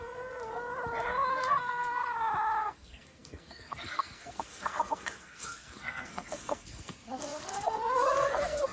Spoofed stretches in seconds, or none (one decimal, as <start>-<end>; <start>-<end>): 0.0-0.7; 1.3-2.0; 2.6-8.7